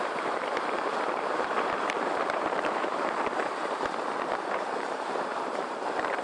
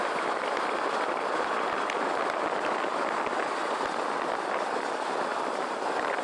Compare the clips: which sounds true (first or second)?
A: second